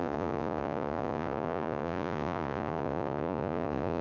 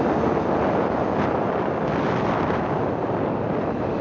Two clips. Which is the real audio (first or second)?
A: second